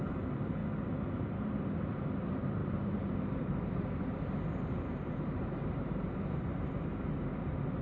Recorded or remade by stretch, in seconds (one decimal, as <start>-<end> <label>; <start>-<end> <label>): 0.0-0.6 remade; 0.6-1.2 recorded; 1.2-6.9 remade; 6.9-7.8 recorded